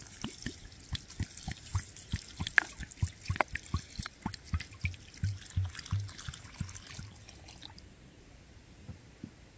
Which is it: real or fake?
real